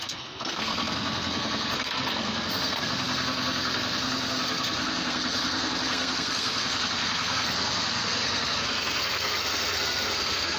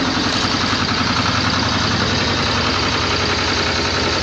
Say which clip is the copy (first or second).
first